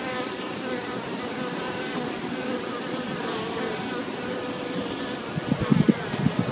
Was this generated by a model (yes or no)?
no